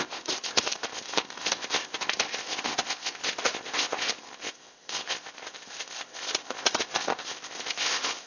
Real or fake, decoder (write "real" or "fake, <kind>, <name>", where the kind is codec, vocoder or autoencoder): fake, codec, ZipCodec